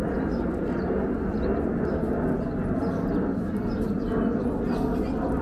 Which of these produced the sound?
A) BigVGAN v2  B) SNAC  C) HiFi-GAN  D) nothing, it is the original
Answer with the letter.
D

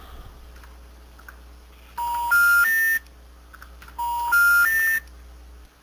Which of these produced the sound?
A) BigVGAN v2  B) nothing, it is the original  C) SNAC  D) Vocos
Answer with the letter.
B